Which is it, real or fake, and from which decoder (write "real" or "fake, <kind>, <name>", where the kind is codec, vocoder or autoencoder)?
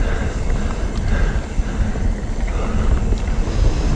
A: real